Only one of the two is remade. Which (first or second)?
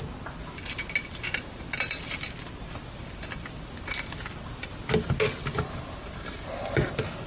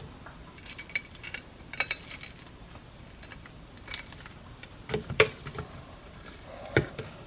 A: second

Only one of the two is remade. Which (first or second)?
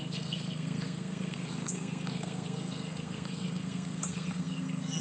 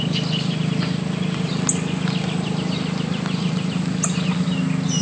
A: first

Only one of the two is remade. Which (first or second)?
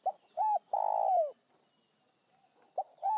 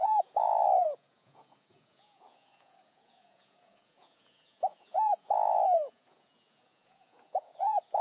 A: second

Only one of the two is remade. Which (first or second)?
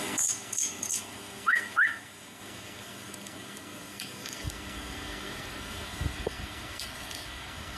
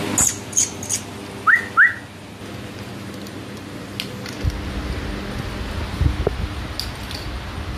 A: first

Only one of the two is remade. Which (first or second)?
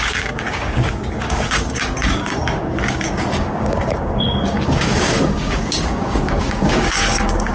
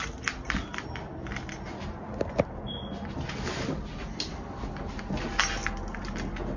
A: first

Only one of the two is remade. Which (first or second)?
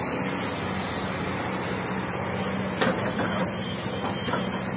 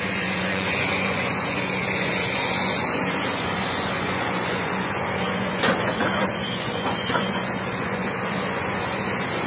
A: second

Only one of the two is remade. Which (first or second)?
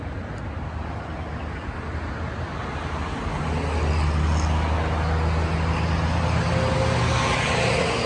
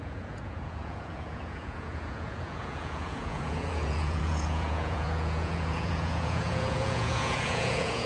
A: second